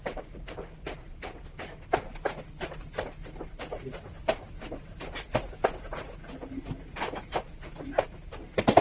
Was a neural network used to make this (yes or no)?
no